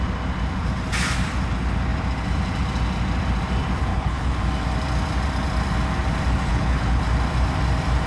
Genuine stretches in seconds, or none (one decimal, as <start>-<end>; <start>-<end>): 0.0-3.9; 4.4-6.5; 7.0-8.1